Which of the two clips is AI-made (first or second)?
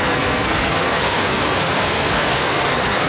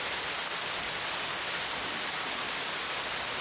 first